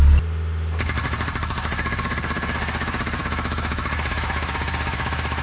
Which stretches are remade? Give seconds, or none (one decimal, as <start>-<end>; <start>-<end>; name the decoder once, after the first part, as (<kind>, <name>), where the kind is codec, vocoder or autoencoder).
3.2-5.4 (autoencoder, DAC-VAE)